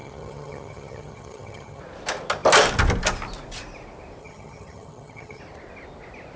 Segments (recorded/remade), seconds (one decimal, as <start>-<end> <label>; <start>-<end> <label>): 0.0-1.8 remade; 1.8-4.2 recorded; 4.2-5.4 remade; 5.4-6.4 recorded